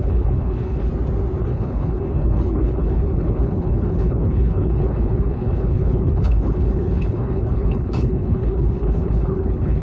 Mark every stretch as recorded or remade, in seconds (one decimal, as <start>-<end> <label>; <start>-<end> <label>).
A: 0.0-0.9 remade; 0.9-1.4 recorded; 1.4-9.8 remade